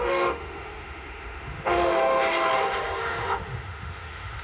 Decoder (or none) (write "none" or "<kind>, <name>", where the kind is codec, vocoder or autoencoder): autoencoder, DAC-VAE